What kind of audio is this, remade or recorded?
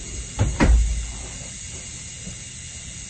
recorded